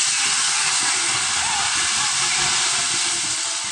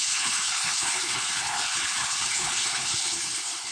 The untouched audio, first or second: first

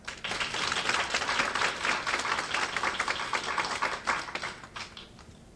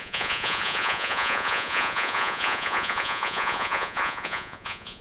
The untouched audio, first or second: first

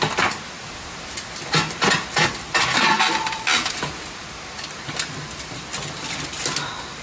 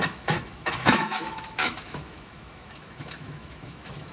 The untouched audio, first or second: first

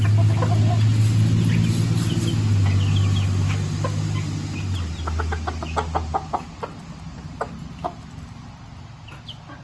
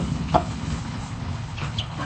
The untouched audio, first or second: first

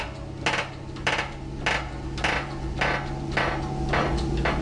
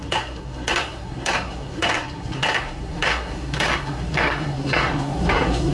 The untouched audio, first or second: first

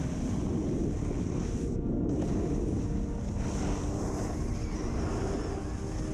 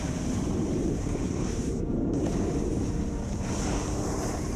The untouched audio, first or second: first